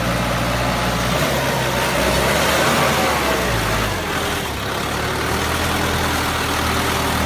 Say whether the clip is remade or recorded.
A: recorded